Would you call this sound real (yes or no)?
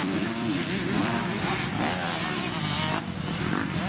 no